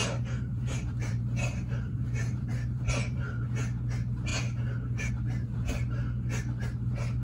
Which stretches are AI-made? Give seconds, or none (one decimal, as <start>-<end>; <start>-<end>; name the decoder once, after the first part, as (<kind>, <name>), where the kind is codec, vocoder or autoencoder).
0.0-3.4 (vocoder, BigVGAN v2)